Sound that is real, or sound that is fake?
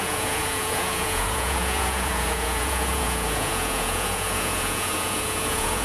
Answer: fake